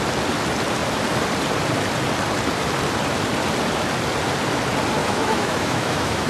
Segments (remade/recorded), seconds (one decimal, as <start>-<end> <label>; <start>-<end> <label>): 0.0-5.0 recorded; 5.0-6.3 remade